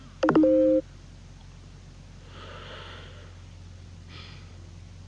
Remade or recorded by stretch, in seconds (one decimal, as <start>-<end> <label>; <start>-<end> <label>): 0.0-5.1 recorded